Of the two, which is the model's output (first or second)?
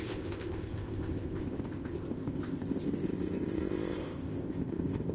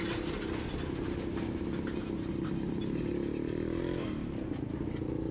first